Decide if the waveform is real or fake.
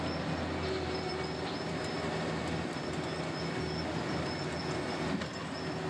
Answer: real